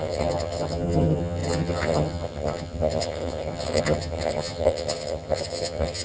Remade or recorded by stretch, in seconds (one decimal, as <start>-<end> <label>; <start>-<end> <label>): 0.0-6.0 remade